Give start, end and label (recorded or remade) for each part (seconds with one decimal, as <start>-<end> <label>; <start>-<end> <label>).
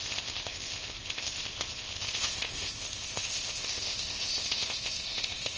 0.0-5.6 remade